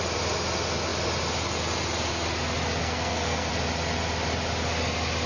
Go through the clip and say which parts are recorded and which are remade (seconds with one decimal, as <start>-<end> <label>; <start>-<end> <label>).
0.0-2.8 recorded; 2.8-3.5 remade; 3.5-5.3 recorded